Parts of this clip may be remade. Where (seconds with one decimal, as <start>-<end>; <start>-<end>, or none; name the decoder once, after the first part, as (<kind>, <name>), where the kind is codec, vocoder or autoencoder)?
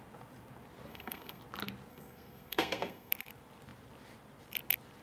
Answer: 0.9-1.4 (codec, SNAC); 1.9-3.1